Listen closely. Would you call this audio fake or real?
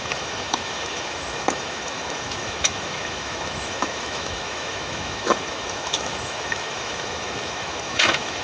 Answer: fake